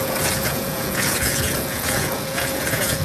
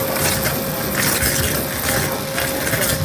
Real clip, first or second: second